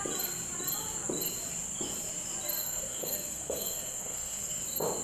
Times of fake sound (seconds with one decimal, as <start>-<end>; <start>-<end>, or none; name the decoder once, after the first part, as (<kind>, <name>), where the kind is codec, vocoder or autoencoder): 2.6-4.6 (codec, SNAC)